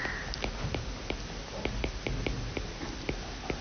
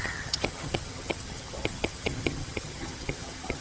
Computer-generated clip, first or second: second